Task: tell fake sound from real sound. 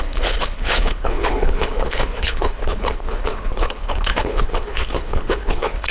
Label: fake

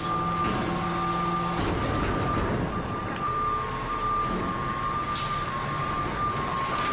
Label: real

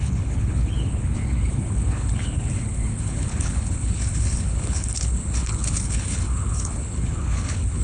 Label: fake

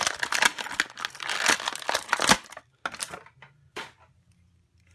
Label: real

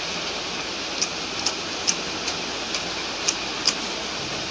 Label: real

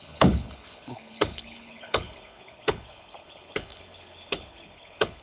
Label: fake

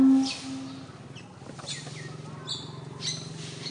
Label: real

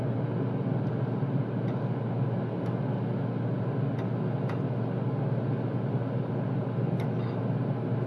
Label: real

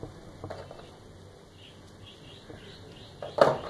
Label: real